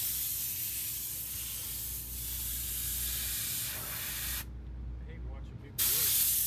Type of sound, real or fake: real